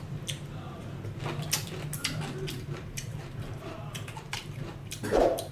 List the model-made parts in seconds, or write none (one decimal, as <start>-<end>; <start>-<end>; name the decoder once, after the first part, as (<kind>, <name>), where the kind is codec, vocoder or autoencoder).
2.0-5.5 (vocoder, BigVGAN v2)